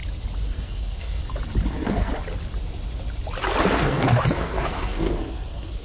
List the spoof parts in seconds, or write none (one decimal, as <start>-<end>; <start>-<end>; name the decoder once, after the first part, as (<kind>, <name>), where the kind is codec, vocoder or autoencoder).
0.5-1.2 (codec, SNAC); 1.7-2.1; 3.7-5.8